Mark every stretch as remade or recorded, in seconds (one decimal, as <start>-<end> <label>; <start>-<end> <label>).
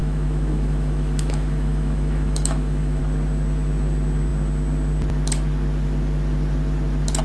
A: 0.0-3.0 remade; 3.0-7.2 recorded